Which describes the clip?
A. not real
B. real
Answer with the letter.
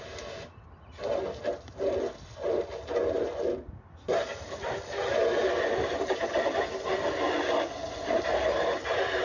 B